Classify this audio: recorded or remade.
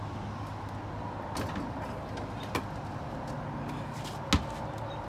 recorded